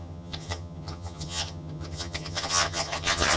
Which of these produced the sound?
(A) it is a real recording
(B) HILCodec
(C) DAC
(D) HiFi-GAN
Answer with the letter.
D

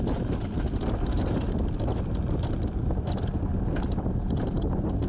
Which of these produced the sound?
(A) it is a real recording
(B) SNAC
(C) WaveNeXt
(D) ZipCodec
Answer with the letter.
A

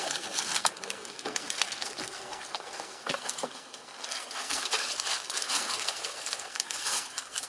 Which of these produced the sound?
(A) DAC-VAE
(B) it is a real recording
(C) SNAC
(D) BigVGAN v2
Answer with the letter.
C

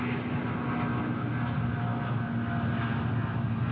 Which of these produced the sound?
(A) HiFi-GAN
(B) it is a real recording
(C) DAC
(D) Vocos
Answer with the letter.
B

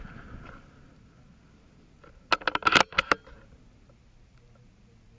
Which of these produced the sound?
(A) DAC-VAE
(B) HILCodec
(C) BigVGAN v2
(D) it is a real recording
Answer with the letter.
D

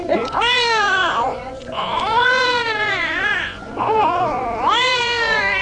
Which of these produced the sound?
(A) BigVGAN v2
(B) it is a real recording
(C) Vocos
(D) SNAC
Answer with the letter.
C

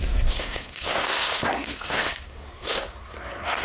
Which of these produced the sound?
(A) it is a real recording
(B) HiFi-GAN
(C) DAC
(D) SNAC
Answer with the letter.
D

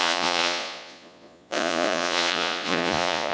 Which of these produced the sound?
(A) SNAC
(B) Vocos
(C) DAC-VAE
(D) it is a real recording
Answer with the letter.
B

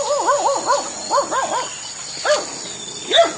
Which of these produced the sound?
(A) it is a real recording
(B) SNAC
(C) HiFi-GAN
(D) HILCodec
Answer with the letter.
A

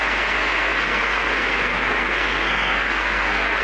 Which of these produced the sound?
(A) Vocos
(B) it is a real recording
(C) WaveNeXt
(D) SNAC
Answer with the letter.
D